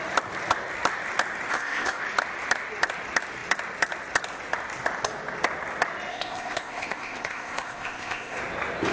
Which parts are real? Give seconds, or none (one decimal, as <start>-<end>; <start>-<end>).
0.0-1.5; 2.0-6.1; 8.4-8.9